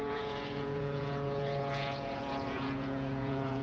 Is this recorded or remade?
remade